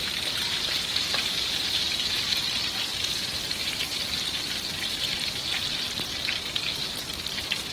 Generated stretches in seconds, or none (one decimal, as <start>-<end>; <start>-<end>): 0.0-3.9; 4.9-7.7